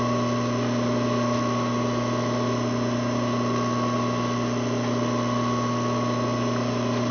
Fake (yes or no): no